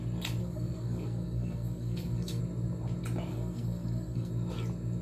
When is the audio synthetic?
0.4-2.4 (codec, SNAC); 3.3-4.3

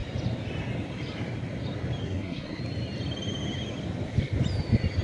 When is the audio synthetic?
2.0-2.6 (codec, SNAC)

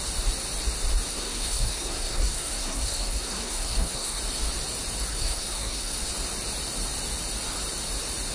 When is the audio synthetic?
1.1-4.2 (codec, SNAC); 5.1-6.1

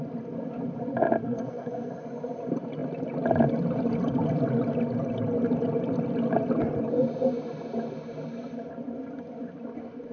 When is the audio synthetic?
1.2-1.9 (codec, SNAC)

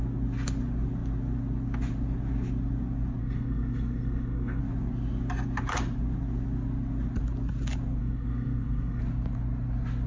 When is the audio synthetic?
3.2-4.6 (codec, SNAC); 8.0-9.0

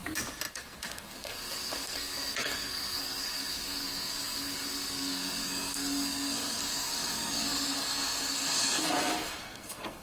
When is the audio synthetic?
0.5-10.0 (codec, SNAC)